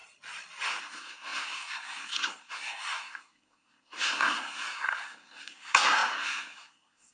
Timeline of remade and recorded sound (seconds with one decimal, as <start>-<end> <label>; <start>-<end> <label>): 0.0-0.8 recorded; 0.8-7.1 remade